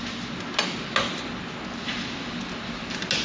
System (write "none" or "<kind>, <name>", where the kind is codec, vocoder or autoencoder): none